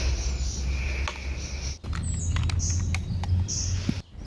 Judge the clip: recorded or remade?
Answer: recorded